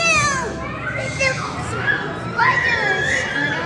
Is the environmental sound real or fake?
real